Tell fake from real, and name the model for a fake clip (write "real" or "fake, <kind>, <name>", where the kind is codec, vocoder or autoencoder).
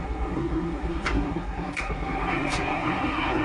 fake, codec, SNAC